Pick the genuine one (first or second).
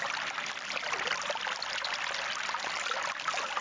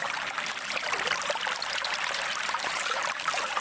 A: first